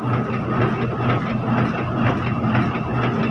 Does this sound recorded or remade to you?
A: recorded